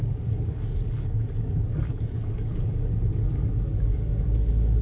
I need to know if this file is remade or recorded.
remade